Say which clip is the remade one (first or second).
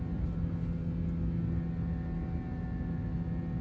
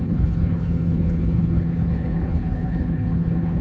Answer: second